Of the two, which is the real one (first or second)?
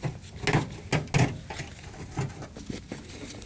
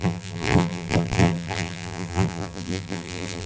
first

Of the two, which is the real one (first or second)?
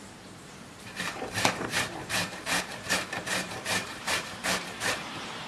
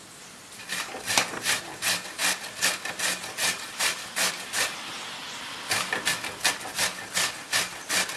second